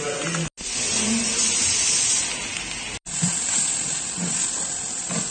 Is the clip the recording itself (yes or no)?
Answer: yes